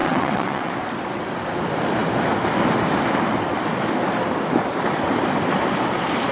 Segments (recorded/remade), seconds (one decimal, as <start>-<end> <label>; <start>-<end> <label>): 0.0-0.7 remade; 0.7-6.3 recorded